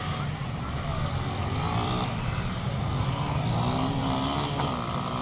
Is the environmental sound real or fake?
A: real